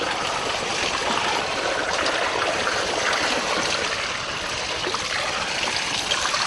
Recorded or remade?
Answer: recorded